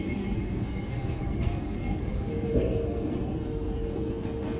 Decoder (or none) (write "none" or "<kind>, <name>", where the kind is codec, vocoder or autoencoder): codec, SNAC